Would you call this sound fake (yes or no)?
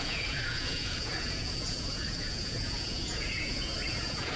yes